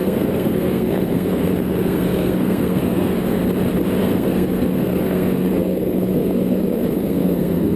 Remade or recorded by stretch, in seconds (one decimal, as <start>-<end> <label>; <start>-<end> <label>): 0.0-3.4 remade; 3.4-4.0 recorded; 4.0-7.8 remade